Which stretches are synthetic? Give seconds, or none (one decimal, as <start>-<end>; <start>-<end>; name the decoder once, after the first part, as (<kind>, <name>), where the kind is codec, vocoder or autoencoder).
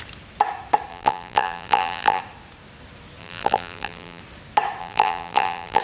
0.9-2.2 (vocoder, BigVGAN v2); 3.2-4.2; 4.8-5.8